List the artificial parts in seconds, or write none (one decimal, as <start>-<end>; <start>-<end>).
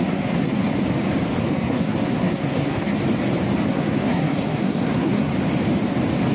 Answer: 0.0-0.6; 1.4-3.0; 3.7-5.3